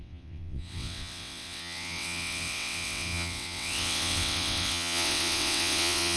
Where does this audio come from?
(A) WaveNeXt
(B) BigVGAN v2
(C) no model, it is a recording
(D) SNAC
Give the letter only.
A